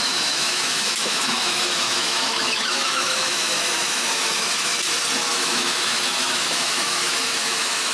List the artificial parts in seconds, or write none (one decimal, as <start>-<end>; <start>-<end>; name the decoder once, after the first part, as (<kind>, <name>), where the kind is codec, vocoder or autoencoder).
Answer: 0.0-4.7 (autoencoder, DAC-VAE); 5.3-7.9